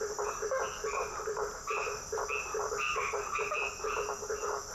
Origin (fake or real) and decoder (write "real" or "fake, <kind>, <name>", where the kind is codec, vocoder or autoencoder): real